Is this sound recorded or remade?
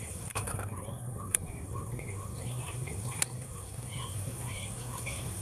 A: remade